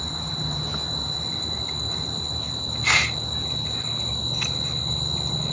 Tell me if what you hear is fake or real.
real